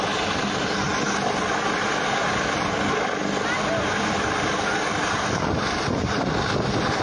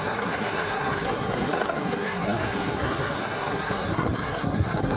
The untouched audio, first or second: first